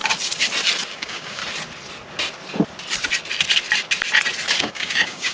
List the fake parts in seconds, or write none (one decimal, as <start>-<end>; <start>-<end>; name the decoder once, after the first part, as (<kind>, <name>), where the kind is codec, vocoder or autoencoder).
0.9-1.4 (codec, DAC); 4.6-5.3

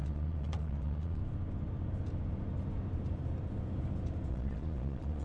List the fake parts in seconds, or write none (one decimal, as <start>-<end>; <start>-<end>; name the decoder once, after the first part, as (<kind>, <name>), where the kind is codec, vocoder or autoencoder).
0.0-1.2 (vocoder, Vocos); 4.3-5.2

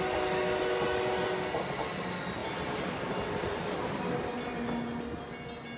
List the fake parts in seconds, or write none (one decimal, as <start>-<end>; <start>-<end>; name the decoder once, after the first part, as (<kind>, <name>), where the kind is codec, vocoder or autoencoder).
none

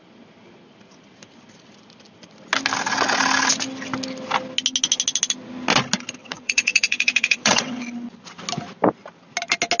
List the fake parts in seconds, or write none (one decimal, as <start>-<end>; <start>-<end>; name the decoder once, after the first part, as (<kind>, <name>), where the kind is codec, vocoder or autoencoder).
6.2-7.8 (vocoder, WaveNeXt)

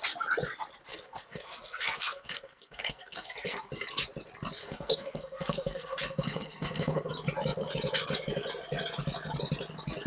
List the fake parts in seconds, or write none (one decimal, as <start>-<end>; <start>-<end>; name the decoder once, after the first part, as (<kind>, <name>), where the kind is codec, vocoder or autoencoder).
0.9-3.7 (codec, SNAC); 4.6-7.1

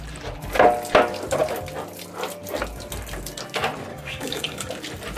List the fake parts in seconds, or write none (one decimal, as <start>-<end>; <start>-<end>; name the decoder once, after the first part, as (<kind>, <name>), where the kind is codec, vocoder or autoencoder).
3.9-4.7 (codec, DAC)

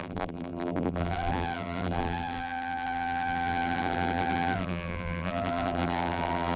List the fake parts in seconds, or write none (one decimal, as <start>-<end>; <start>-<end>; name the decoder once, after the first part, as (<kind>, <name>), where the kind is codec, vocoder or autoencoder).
0.0-6.6 (vocoder, BigVGAN v2)

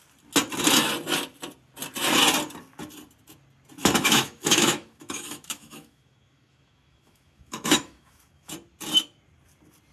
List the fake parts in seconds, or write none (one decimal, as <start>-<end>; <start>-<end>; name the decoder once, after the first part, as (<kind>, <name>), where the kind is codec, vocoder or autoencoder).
3.8-8.5 (autoencoder, DAC-VAE)